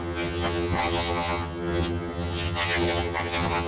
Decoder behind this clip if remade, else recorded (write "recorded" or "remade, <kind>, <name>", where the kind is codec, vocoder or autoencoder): remade, vocoder, HiFi-GAN